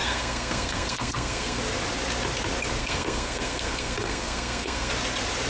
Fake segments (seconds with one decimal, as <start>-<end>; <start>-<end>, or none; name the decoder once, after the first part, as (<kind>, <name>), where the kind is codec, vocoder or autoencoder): 0.0-1.6 (codec, SNAC); 2.8-4.9